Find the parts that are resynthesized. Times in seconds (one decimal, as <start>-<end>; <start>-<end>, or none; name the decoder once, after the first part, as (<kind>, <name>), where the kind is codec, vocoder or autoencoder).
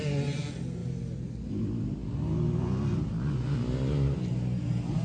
none